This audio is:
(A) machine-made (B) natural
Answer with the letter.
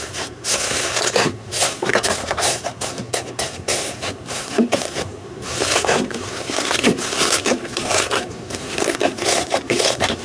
A